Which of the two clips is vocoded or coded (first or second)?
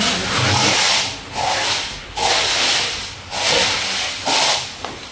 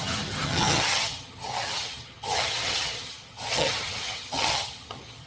second